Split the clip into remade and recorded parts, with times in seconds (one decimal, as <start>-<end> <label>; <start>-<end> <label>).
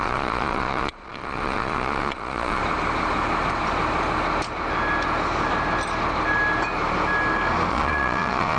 0.0-2.6 remade; 2.6-7.7 recorded; 7.7-8.6 remade